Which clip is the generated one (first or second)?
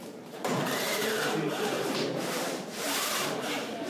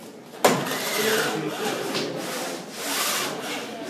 first